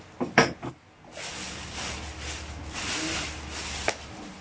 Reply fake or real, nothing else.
real